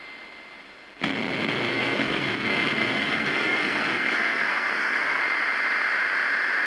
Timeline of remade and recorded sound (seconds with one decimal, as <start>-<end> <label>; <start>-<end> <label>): 0.0-1.7 recorded; 1.7-5.2 remade; 5.2-6.7 recorded

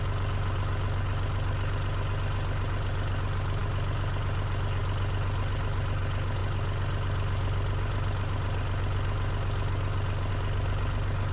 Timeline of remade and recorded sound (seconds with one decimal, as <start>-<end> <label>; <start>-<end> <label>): 0.0-11.3 recorded

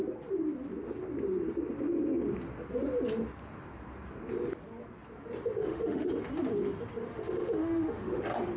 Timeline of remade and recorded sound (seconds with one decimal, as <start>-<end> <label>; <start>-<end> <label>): 0.0-5.6 recorded; 5.6-6.1 remade; 6.1-7.1 recorded; 7.1-8.2 remade; 8.2-8.6 recorded

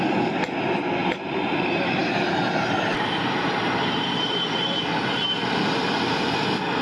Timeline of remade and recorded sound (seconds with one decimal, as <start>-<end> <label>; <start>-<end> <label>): 0.0-1.0 recorded; 1.0-5.1 remade; 5.1-6.8 recorded

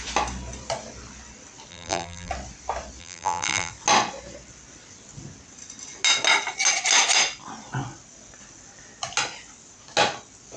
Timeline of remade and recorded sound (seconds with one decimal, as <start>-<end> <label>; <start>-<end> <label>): 0.0-1.7 recorded; 1.7-2.3 remade; 2.3-3.0 recorded; 3.0-3.7 remade; 3.7-10.6 recorded

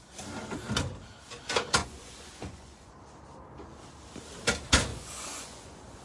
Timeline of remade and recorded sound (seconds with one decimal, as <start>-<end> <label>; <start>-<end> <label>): 0.0-1.8 recorded; 1.8-2.9 remade; 2.9-4.9 recorded; 4.9-6.0 remade